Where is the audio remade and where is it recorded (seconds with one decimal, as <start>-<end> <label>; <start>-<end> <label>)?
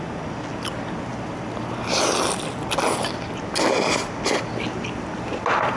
0.0-5.8 recorded